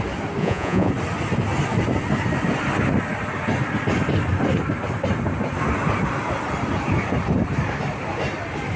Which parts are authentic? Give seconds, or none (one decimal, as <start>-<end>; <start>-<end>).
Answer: 0.0-0.4; 0.9-8.8

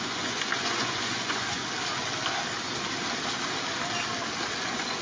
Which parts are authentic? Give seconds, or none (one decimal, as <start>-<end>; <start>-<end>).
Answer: 1.6-4.6

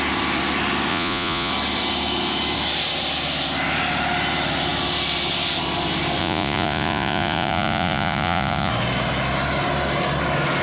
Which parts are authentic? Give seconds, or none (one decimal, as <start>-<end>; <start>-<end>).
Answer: 0.0-0.9; 1.5-6.2; 8.7-10.6

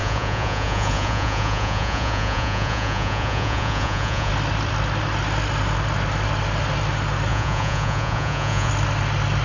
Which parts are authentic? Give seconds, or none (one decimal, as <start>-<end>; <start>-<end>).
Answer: 4.3-7.3; 8.7-9.4

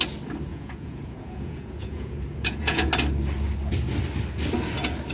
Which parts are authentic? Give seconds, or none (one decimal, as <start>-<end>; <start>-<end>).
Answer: 0.0-0.5; 2.9-5.1

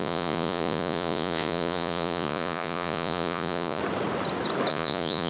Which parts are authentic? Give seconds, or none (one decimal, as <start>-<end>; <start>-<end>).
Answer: 3.8-4.7

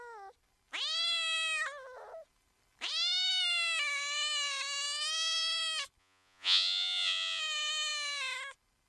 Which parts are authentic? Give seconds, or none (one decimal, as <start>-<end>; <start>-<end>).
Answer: 0.0-6.0; 7.4-8.9